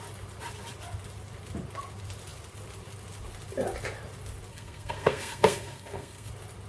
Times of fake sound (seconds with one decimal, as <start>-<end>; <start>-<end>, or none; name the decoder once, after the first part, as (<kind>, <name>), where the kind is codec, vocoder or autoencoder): 4.5-6.3 (codec, SNAC)